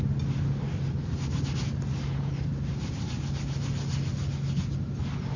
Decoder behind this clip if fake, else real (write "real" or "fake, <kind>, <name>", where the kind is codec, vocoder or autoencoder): real